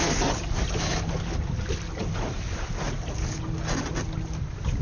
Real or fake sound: real